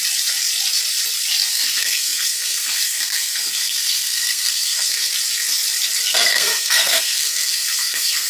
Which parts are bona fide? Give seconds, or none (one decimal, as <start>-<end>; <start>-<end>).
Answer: 0.0-1.5; 5.0-6.0

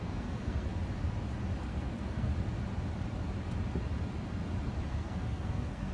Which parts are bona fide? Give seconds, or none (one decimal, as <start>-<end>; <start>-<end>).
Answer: 0.7-1.6; 2.3-4.9

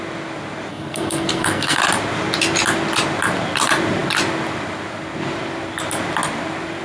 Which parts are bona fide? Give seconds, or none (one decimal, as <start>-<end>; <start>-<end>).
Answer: 0.0-0.7; 1.8-6.8

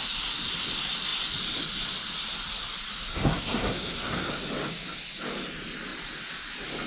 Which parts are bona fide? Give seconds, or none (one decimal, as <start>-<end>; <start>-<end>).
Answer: 0.0-3.1; 4.3-6.9